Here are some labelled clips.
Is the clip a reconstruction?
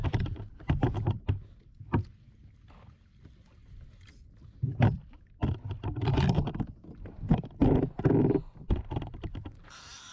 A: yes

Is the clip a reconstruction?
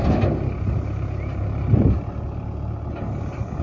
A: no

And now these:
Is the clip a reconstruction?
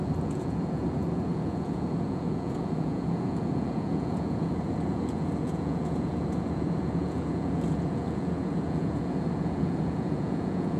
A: yes